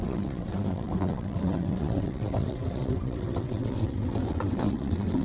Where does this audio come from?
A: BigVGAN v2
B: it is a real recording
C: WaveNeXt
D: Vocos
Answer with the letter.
C